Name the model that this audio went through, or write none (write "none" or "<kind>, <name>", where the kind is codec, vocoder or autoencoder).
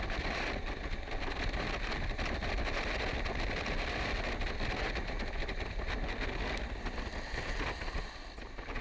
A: none